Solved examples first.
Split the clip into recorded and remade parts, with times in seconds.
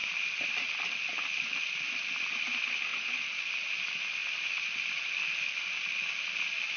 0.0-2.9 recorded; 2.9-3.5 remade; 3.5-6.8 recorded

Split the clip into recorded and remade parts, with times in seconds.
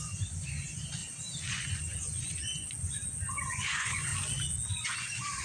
0.0-1.0 remade; 1.0-1.5 recorded; 1.5-4.1 remade; 4.1-4.7 recorded; 4.7-5.4 remade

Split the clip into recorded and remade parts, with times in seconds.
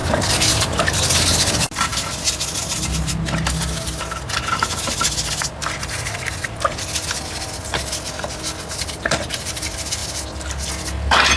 0.0-11.4 recorded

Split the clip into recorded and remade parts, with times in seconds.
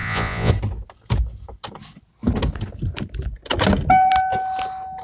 0.0-0.5 remade; 0.5-5.0 recorded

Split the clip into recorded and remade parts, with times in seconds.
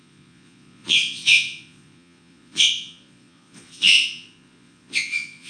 0.0-5.5 remade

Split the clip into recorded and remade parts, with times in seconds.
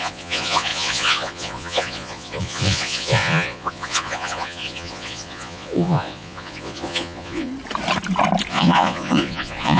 0.0-7.5 remade; 7.5-8.5 recorded; 8.5-9.8 remade